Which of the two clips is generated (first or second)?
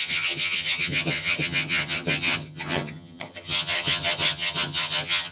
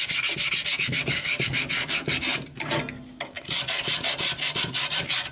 first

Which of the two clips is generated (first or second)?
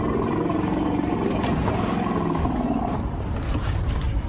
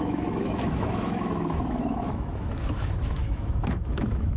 second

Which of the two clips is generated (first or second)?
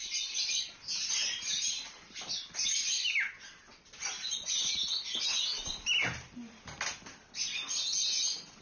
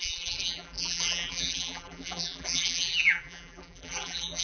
second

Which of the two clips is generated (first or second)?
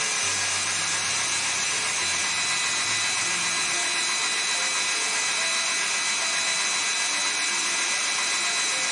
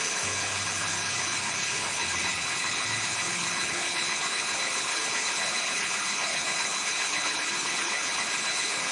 second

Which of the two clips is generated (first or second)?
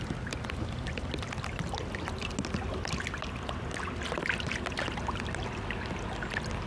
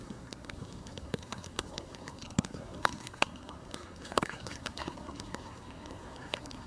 second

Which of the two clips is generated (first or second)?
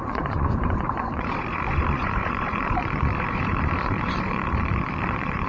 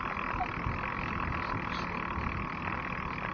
first